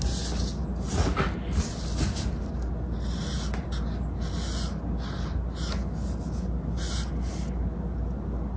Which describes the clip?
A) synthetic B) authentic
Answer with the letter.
B